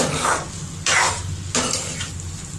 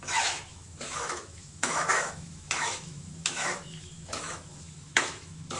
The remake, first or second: second